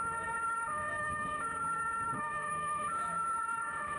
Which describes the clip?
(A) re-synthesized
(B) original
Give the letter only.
A